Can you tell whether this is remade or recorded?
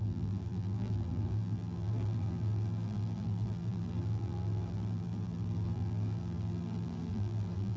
remade